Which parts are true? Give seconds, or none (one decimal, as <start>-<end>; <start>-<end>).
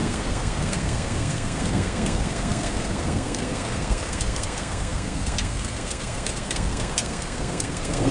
none